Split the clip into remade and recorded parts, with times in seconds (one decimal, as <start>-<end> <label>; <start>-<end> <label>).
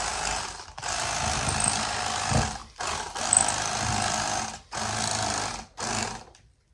0.0-6.7 recorded